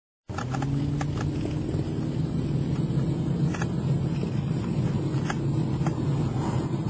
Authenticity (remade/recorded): recorded